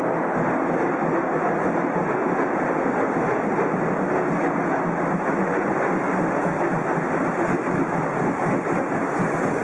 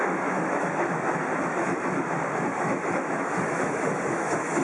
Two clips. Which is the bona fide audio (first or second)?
first